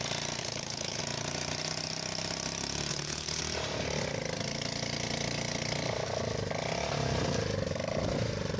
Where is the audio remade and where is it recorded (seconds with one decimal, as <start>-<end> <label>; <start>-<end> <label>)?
0.0-0.4 recorded; 0.4-1.0 remade; 1.0-2.9 recorded; 2.9-3.4 remade; 3.4-8.6 recorded